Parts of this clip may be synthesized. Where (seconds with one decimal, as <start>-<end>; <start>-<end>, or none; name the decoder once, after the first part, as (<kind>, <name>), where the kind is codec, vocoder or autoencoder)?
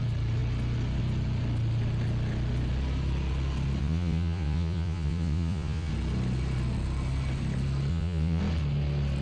3.8-5.9 (vocoder, Vocos); 7.9-8.4